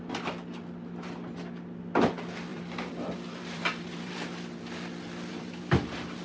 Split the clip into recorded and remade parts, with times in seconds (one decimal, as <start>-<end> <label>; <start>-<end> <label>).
0.0-2.5 recorded; 2.5-4.2 remade; 4.2-5.3 recorded; 5.3-6.2 remade